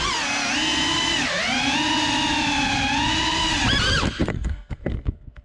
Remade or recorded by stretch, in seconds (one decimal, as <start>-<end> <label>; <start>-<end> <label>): 0.0-4.3 recorded; 4.3-5.4 remade